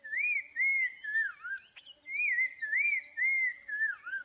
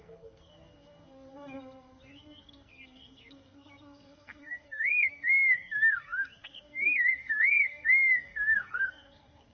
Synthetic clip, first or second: second